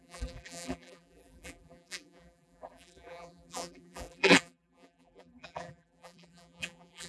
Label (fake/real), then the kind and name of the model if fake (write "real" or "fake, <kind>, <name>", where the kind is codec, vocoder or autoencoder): fake, vocoder, BigVGAN v2